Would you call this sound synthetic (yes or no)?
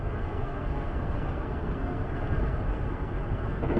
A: yes